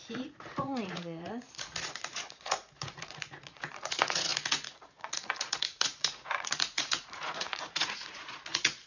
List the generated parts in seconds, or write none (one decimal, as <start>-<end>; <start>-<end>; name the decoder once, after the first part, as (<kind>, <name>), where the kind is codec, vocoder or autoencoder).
0.0-8.9 (vocoder, Vocos)

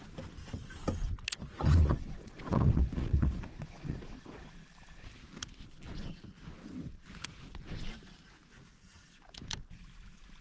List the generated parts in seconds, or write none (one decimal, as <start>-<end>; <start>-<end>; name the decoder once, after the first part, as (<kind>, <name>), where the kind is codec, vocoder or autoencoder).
1.3-4.4 (vocoder, Vocos)

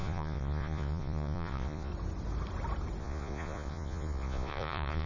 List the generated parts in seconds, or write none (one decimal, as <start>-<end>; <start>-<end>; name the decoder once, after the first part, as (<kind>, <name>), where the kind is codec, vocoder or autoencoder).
0.0-1.9 (vocoder, Vocos); 3.0-5.1

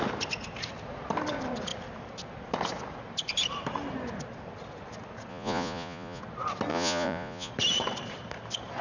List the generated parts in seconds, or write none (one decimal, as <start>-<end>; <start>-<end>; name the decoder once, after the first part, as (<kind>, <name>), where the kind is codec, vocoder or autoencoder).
5.3-6.2 (vocoder, Vocos); 6.7-7.5

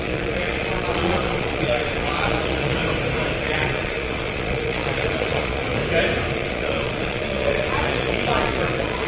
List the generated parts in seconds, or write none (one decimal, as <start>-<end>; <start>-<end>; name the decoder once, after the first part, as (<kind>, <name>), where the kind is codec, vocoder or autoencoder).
0.0-2.8 (vocoder, Vocos); 3.4-5.8; 6.3-9.1

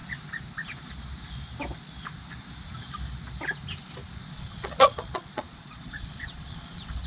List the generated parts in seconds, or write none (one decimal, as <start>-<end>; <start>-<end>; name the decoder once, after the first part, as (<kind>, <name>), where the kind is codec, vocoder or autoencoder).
4.3-7.1 (vocoder, Vocos)